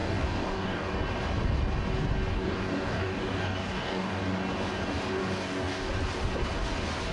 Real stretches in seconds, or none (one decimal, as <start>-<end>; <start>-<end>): 0.9-2.3; 4.2-5.2; 5.9-7.1